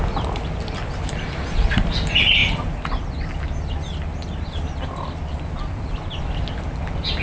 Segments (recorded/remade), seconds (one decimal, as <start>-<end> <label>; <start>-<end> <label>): 0.0-7.2 recorded